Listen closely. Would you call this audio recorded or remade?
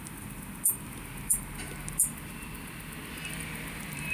recorded